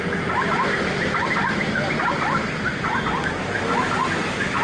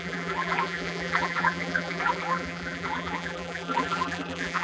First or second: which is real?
first